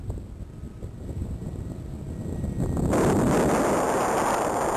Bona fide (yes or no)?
yes